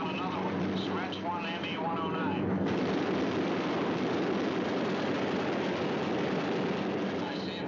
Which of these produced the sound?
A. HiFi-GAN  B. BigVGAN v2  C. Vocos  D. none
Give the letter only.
D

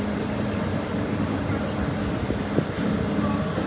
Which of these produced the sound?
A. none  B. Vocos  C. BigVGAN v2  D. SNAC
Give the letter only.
A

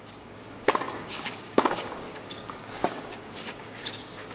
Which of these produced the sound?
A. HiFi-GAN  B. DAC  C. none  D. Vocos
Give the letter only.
B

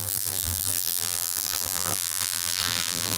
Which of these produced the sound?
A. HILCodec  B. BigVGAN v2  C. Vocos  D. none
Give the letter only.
B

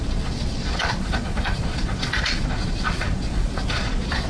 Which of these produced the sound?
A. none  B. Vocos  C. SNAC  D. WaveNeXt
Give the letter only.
B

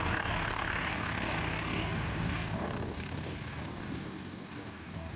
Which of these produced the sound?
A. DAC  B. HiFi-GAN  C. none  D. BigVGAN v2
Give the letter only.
A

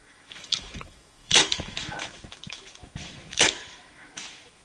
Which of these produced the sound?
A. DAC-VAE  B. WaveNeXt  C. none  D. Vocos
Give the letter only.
A